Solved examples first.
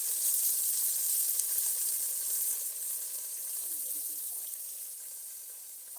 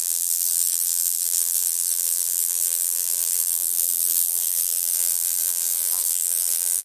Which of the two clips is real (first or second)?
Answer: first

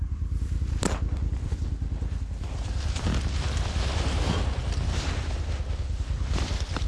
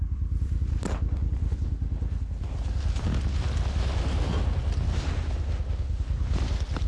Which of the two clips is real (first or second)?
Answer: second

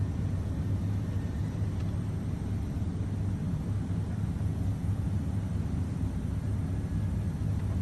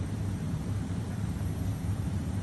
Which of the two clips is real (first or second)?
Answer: first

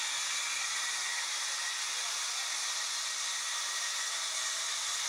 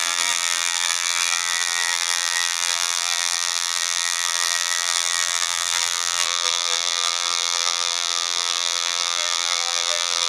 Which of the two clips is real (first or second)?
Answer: first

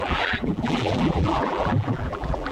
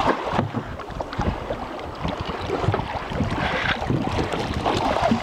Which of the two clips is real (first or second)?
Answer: second